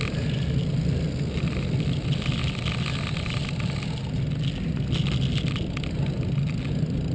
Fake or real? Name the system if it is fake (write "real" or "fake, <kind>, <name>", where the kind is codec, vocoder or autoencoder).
real